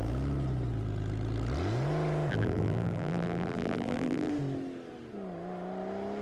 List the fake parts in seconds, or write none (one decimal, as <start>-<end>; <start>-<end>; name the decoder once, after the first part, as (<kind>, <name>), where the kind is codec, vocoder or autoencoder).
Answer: 2.3-4.3 (vocoder, BigVGAN v2)